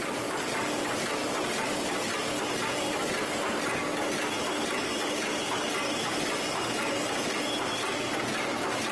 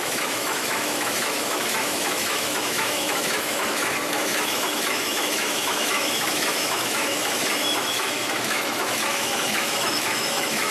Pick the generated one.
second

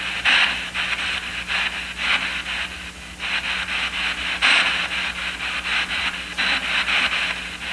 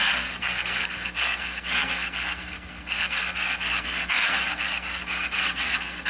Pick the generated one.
second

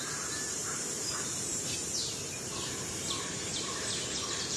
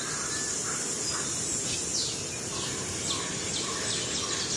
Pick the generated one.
first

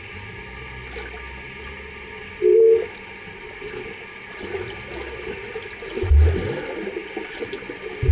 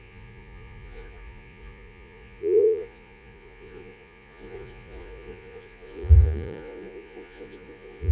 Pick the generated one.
second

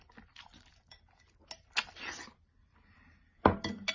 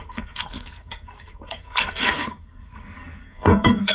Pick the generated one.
second